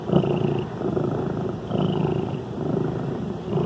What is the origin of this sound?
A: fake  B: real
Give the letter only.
A